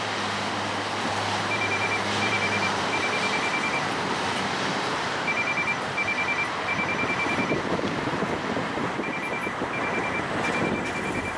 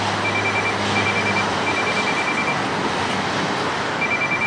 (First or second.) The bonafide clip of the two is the second